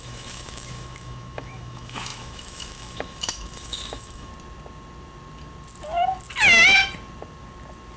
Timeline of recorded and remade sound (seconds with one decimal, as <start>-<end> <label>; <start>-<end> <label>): 0.0-4.3 remade; 4.3-8.0 recorded